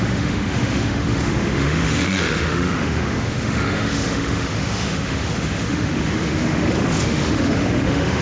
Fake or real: fake